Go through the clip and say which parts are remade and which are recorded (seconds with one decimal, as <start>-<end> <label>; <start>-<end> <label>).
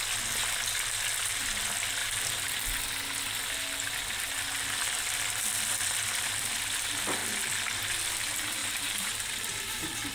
0.0-8.6 recorded; 8.6-10.1 remade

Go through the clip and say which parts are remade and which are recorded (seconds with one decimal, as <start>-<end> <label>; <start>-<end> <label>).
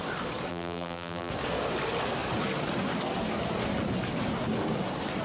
0.0-0.5 recorded; 0.5-1.3 remade; 1.3-5.2 recorded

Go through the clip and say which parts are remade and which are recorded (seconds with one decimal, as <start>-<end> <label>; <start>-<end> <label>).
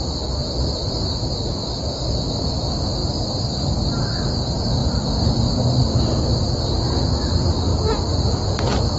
0.0-7.7 recorded; 7.7-8.6 remade; 8.6-9.0 recorded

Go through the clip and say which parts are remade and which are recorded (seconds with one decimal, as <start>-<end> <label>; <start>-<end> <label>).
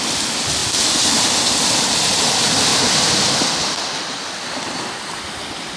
0.0-2.7 recorded; 2.7-3.9 remade; 3.9-5.8 recorded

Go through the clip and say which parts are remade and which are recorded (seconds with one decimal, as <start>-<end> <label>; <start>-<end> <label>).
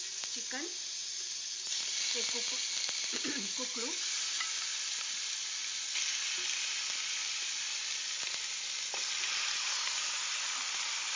0.0-11.2 recorded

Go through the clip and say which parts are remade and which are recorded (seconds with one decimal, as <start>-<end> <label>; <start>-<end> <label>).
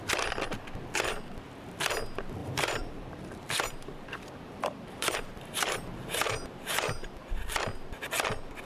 0.0-2.4 recorded; 2.4-7.2 remade; 7.2-8.7 recorded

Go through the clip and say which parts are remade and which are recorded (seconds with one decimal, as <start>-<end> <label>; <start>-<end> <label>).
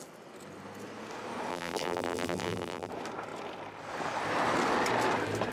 0.0-1.5 recorded; 1.5-2.9 remade; 2.9-5.5 recorded